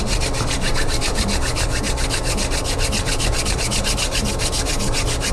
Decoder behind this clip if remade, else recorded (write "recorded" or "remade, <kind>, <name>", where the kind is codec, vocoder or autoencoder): recorded